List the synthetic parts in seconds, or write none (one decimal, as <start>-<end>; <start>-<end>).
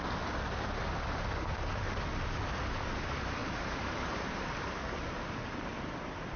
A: 3.4-5.2